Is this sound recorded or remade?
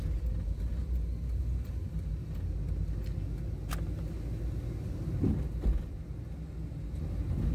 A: recorded